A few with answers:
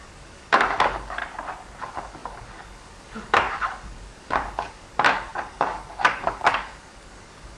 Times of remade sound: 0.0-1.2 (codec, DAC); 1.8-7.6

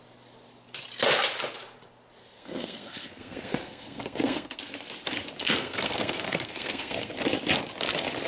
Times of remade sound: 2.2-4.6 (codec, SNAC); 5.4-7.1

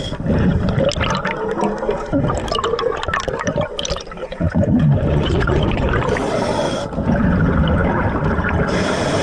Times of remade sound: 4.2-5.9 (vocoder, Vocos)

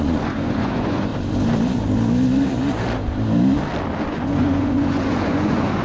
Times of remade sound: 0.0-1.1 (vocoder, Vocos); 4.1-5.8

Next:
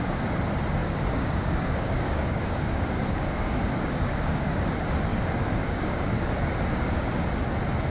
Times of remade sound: 0.8-4.6 (codec, DAC); 5.1-7.1

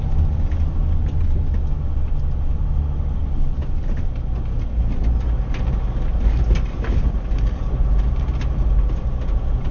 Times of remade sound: none

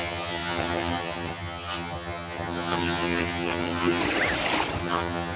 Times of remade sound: 0.0-4.0 (vocoder, HiFi-GAN); 4.8-5.4

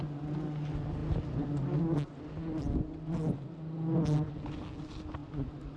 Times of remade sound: none